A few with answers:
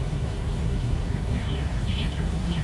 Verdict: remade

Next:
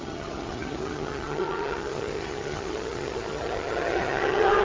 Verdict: remade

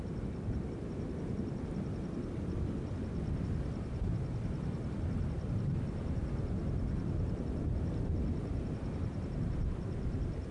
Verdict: recorded